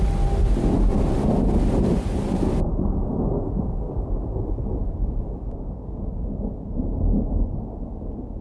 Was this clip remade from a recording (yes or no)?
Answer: no